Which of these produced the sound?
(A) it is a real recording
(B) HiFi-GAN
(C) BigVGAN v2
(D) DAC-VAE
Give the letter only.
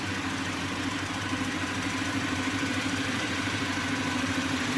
C